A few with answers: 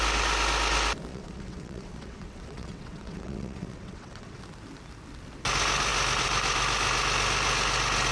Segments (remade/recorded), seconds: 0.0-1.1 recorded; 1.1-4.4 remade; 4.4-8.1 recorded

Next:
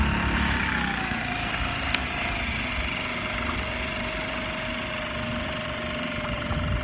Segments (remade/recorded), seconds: 0.0-0.6 recorded; 0.6-1.2 remade; 1.2-6.8 recorded

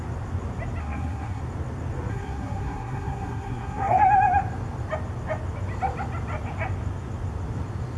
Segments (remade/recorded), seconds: 0.0-0.8 recorded; 0.8-1.4 remade; 1.4-2.1 recorded; 2.1-4.0 remade; 4.0-8.0 recorded

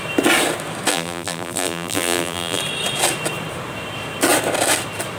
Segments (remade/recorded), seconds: 0.0-0.9 recorded; 0.9-2.6 remade; 2.6-5.2 recorded

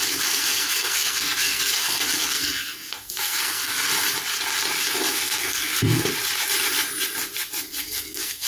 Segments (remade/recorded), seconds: 0.0-3.9 remade; 3.9-5.1 recorded; 5.1-6.1 remade; 6.1-7.7 recorded; 7.7-8.5 remade